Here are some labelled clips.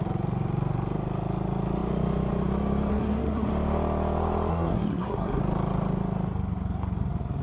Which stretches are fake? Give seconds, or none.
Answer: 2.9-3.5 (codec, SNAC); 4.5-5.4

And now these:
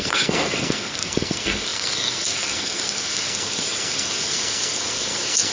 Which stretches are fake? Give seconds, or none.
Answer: 0.0-5.5 (codec, SNAC)

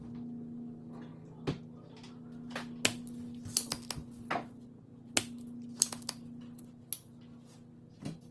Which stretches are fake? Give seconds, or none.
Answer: none